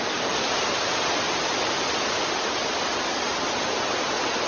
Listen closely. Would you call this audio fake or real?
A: real